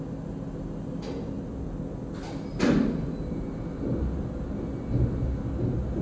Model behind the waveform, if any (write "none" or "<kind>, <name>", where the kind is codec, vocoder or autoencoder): none